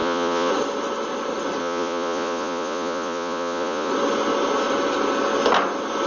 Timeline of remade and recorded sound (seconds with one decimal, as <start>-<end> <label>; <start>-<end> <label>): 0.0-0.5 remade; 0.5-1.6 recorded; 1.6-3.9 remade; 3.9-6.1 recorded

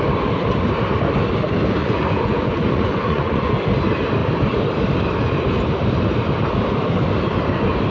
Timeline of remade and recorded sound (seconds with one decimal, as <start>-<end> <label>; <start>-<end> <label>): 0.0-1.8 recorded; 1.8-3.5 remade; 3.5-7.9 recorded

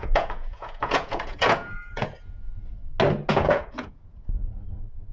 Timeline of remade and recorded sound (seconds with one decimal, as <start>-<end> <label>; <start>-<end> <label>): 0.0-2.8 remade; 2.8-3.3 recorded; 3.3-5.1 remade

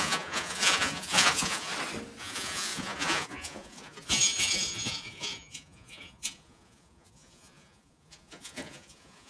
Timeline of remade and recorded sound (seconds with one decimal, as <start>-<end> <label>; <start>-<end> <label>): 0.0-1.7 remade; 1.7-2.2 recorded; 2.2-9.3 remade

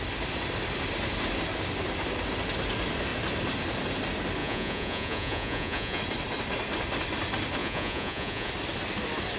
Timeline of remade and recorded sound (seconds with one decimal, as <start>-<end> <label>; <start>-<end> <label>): 0.0-4.4 recorded; 4.4-6.0 remade; 6.0-7.6 recorded; 7.6-8.5 remade; 8.5-9.4 recorded